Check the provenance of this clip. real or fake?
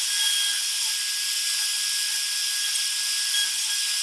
real